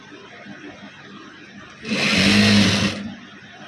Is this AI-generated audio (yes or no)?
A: no